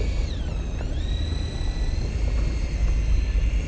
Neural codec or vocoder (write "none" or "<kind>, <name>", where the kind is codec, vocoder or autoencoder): none